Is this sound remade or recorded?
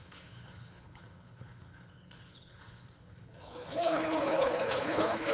remade